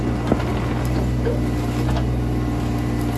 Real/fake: real